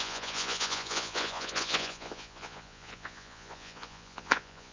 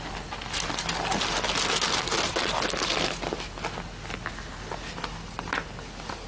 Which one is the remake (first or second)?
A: first